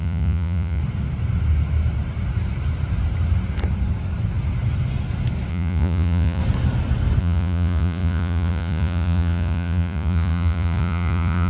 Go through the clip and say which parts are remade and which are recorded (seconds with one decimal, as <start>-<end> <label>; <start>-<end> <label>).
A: 0.0-0.8 remade; 0.8-5.5 recorded; 5.5-6.4 remade; 6.4-7.2 recorded; 7.2-11.5 remade